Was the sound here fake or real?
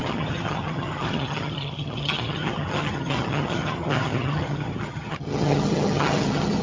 fake